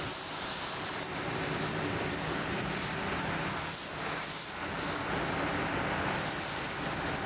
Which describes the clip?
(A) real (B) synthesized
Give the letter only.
A